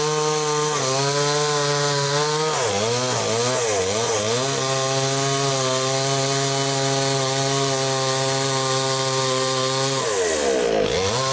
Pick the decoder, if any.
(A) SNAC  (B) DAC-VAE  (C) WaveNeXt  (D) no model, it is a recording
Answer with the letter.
D